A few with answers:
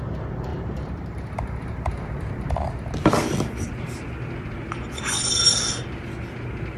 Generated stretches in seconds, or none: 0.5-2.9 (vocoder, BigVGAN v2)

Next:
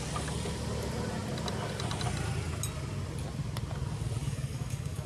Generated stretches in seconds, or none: 4.2-5.1 (codec, DAC)

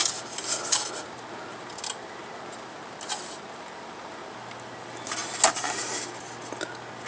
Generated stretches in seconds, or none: none

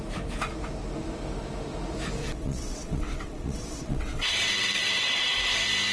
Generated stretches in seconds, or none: 2.2-5.3 (vocoder, WaveNeXt)

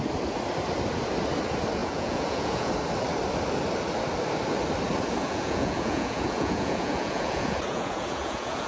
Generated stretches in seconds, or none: 1.8-2.7 (vocoder, Vocos); 5.2-8.7